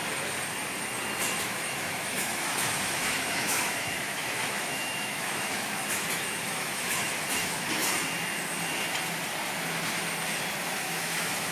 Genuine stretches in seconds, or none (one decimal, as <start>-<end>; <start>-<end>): 0.0-1.4; 7.8-10.6